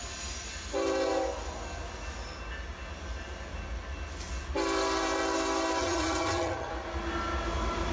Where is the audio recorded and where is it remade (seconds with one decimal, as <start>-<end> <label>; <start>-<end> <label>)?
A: 0.0-5.8 recorded; 5.8-6.7 remade; 6.7-7.9 recorded